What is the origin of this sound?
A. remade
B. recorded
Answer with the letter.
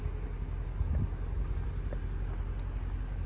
B